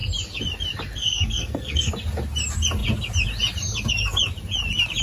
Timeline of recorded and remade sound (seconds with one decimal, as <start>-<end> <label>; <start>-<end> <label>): 0.0-1.0 recorded; 1.0-1.9 remade; 1.9-5.0 recorded